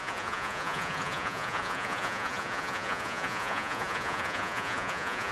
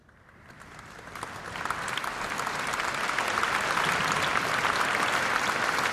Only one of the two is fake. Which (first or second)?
first